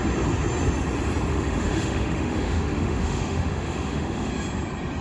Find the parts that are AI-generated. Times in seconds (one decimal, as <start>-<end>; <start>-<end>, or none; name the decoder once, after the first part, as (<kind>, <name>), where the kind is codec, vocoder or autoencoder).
1.3-4.3 (autoencoder, DAC-VAE)

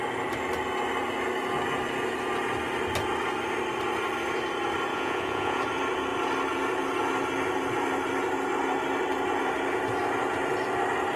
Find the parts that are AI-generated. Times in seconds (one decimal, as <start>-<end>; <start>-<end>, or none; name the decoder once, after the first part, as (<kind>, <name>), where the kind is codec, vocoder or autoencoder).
4.9-5.6 (vocoder, Vocos)

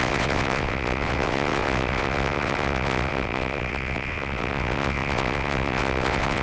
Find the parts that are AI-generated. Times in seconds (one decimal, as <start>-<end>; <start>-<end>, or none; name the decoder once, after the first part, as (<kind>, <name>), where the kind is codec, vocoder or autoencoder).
0.0-6.4 (vocoder, WaveNeXt)